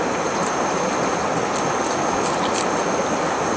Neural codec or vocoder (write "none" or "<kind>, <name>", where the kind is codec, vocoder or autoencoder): none